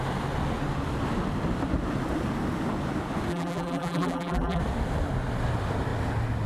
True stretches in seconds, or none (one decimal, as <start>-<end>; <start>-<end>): 0.0-3.3; 4.6-6.5